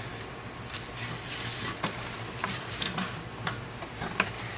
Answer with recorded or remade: recorded